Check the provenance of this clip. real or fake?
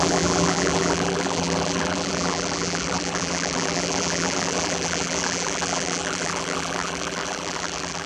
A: fake